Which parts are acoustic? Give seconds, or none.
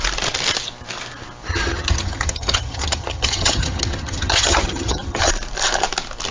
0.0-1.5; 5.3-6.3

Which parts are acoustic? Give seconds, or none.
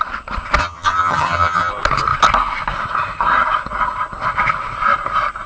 0.0-0.6; 1.7-5.5